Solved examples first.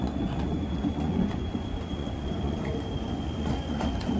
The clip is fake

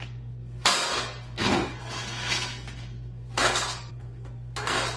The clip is fake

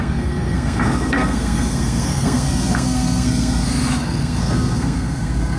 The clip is fake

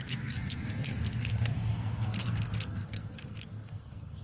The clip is fake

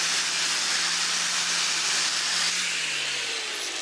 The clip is real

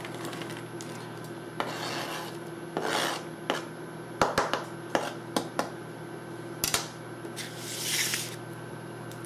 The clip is real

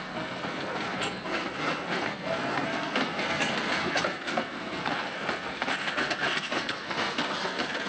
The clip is fake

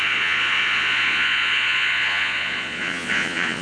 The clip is fake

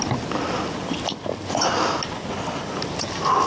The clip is real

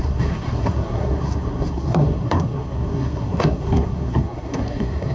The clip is fake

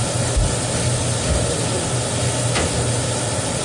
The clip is real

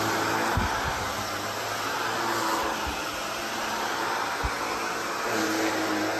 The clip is real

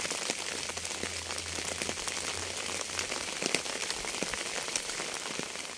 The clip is real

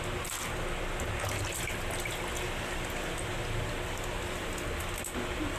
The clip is real